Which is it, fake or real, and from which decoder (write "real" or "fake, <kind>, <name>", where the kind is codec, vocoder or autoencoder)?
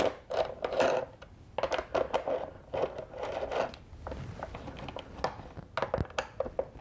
real